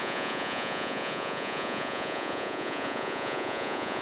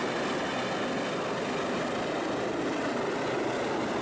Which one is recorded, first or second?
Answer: second